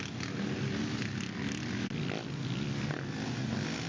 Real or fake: real